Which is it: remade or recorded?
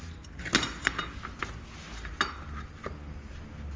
recorded